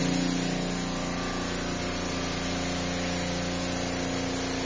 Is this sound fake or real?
real